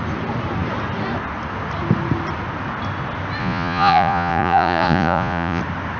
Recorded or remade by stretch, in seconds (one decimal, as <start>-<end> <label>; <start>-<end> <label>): 0.0-3.4 recorded; 3.4-5.6 remade; 5.6-6.0 recorded